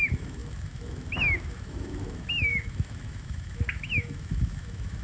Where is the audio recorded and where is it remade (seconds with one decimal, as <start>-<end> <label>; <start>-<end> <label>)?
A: 0.0-5.0 remade